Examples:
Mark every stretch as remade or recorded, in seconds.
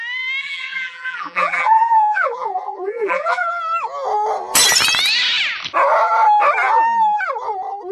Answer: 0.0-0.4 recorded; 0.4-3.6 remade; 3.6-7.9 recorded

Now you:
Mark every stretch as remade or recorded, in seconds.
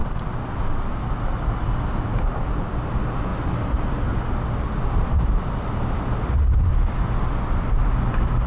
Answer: 0.0-3.3 recorded; 3.3-6.7 remade; 6.7-8.5 recorded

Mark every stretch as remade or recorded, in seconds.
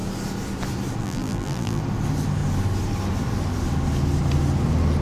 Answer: 0.0-1.0 recorded; 1.0-1.8 remade; 1.8-5.0 recorded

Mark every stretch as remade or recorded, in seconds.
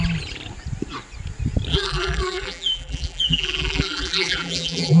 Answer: 0.0-1.7 recorded; 1.7-5.0 remade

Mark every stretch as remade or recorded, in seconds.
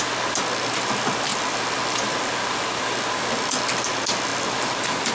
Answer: 0.0-1.3 recorded; 1.3-3.6 remade; 3.6-4.3 recorded; 4.3-5.1 remade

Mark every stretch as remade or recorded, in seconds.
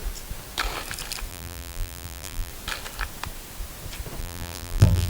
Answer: 0.0-1.3 recorded; 1.3-2.5 remade; 2.5-4.2 recorded; 4.2-5.1 remade